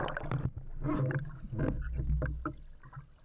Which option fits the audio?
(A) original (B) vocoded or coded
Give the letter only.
A